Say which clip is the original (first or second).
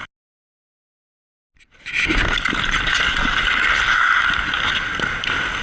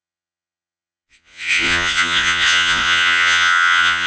first